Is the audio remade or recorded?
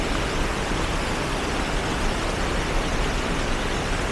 recorded